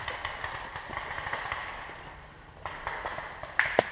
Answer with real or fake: real